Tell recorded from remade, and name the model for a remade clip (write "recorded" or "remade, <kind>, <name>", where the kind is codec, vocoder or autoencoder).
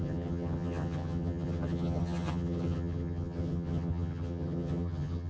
remade, vocoder, HiFi-GAN